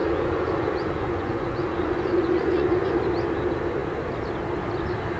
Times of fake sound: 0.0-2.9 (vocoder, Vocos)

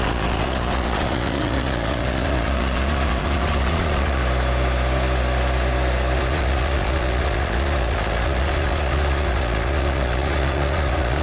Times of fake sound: 0.0-4.2 (vocoder, Vocos); 6.2-11.2

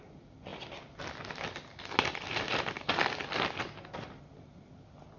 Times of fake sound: none

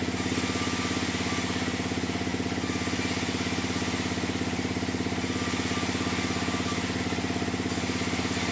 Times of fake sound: none

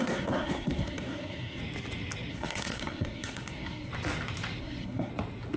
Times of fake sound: 0.0-1.6 (codec, SNAC); 2.3-3.9; 4.6-5.1